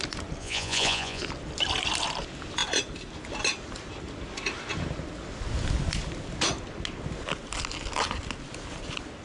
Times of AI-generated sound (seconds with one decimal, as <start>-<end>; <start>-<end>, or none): 0.4-1.2